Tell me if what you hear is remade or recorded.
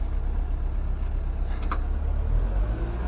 recorded